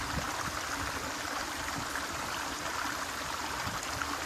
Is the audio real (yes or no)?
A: yes